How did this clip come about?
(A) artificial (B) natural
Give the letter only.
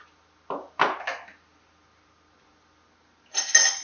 B